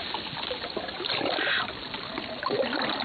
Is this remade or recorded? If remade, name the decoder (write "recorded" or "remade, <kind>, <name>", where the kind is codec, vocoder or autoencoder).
recorded